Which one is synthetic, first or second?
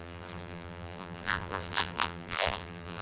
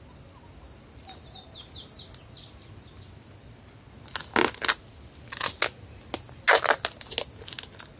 first